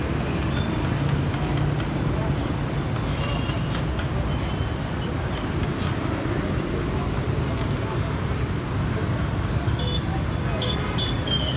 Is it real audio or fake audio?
real